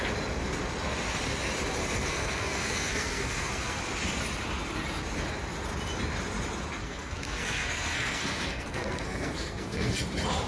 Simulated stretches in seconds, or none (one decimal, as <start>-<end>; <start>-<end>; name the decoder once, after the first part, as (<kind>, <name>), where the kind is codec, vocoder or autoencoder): 1.8-3.8 (codec, SNAC); 6.8-10.0